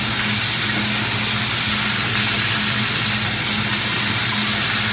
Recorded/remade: recorded